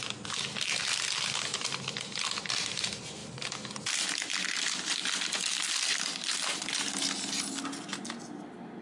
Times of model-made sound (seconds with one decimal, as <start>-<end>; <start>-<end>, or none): none